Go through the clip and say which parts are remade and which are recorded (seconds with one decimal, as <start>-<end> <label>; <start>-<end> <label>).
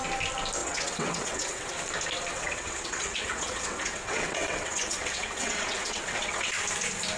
0.0-0.6 recorded; 0.6-1.7 remade; 1.7-2.3 recorded; 2.3-6.5 remade; 6.5-7.2 recorded